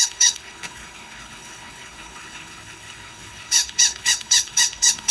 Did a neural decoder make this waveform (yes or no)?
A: yes